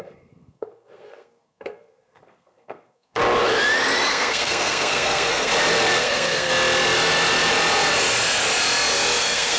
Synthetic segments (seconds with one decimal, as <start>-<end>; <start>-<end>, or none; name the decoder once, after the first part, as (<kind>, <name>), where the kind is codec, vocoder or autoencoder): 0.0-3.2 (codec, SNAC); 4.1-5.5; 6.0-6.5; 9.2-9.6